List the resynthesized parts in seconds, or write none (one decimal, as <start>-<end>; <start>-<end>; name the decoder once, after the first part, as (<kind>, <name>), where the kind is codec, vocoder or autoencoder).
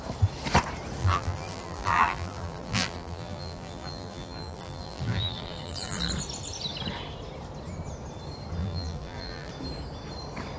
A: 1.0-6.1 (vocoder, BigVGAN v2); 8.6-9.5